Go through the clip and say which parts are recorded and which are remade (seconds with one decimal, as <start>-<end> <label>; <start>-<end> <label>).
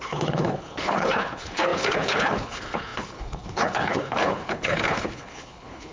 0.0-5.9 remade